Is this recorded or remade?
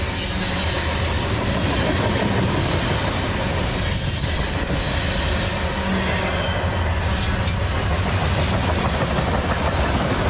recorded